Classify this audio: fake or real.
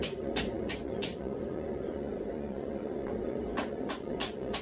fake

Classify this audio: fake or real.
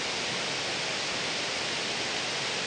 real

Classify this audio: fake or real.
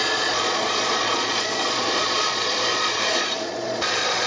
fake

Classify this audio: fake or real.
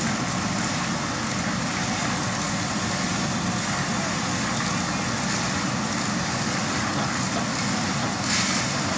real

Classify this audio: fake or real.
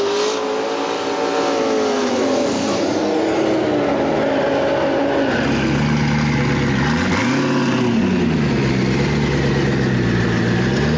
real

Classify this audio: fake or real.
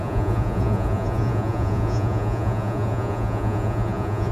fake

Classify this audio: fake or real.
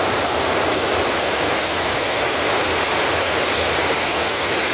real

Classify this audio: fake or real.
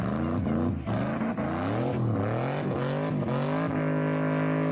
real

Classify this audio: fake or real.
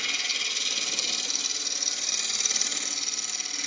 real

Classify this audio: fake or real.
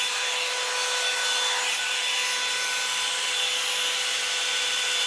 real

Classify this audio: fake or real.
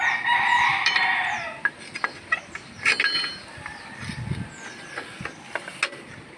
real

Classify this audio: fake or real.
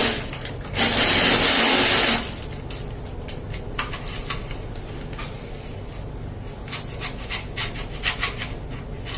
real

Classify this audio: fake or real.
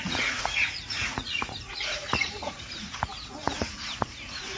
fake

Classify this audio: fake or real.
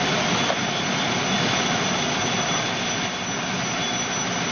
real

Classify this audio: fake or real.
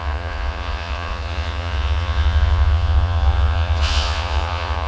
fake